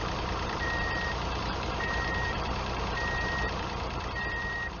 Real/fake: fake